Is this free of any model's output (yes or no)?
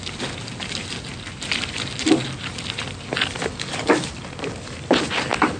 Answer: yes